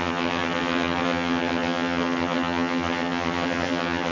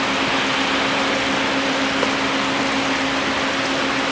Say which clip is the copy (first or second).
first